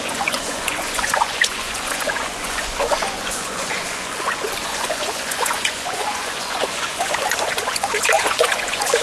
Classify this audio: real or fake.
fake